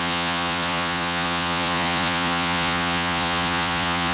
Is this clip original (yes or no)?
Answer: no